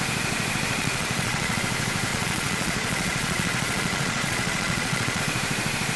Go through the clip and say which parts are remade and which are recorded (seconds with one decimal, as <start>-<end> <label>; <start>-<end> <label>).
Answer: 0.0-0.8 recorded; 0.8-1.6 remade; 1.6-2.1 recorded; 2.1-5.2 remade; 5.2-6.0 recorded

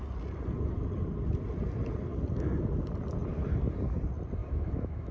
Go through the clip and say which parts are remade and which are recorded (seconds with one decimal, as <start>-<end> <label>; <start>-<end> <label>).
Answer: 0.0-4.4 recorded; 4.4-5.1 remade

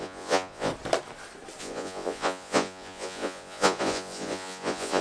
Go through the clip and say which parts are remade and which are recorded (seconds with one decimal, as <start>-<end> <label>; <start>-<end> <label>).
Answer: 0.0-0.7 remade; 0.7-1.6 recorded; 1.6-5.0 remade

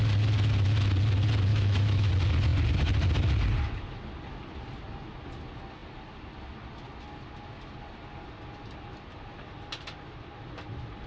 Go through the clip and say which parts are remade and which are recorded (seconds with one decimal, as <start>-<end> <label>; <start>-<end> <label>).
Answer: 0.0-1.5 recorded; 1.5-2.1 remade; 2.1-11.1 recorded

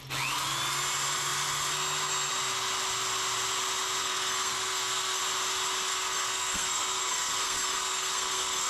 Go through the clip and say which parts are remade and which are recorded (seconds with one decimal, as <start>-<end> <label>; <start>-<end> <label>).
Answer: 0.0-4.0 recorded; 4.0-5.2 remade; 5.2-5.9 recorded; 5.9-8.7 remade

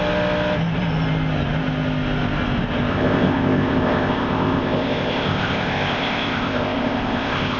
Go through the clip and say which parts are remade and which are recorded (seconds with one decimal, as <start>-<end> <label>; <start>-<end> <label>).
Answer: 0.0-2.9 recorded; 2.9-7.6 remade

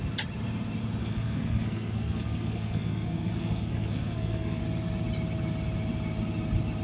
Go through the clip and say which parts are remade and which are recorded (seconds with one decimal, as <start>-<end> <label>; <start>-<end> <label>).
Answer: 0.0-1.0 recorded; 1.0-4.6 remade; 4.6-6.8 recorded

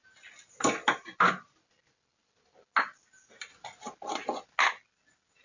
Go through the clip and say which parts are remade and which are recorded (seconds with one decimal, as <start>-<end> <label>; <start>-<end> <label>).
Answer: 0.0-5.4 recorded